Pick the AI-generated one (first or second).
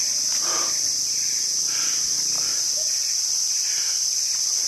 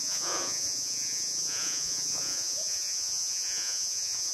second